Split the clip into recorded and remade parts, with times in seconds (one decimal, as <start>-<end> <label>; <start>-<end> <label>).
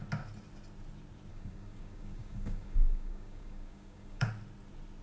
0.0-1.3 recorded; 1.3-4.3 remade; 4.3-5.0 recorded